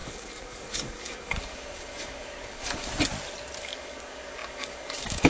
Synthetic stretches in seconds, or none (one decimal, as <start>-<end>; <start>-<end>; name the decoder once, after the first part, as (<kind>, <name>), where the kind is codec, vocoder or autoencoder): 0.0-2.9 (codec, DAC); 3.6-5.3